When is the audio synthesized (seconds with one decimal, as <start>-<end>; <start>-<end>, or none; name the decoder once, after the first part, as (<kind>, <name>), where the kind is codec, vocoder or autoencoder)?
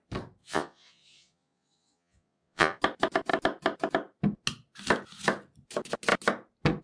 0.4-2.8 (vocoder, Vocos)